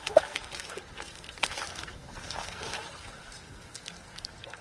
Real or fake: fake